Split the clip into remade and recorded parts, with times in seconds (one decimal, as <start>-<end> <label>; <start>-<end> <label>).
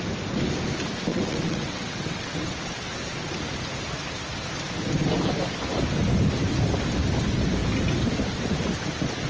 0.0-1.1 recorded; 1.1-2.5 remade; 2.5-9.3 recorded